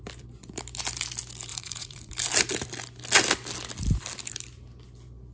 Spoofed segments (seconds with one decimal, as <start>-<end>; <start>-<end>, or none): 1.5-2.1